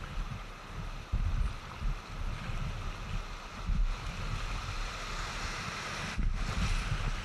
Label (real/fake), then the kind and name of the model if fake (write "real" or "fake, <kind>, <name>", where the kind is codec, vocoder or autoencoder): real